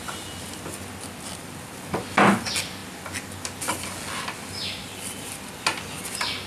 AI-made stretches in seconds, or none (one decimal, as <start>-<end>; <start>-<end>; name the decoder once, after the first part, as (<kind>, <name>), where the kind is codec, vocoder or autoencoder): none